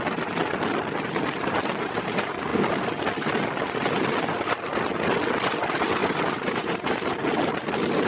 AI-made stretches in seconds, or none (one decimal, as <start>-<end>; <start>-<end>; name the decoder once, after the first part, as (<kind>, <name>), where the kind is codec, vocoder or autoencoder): 6.0-6.9 (vocoder, BigVGAN v2)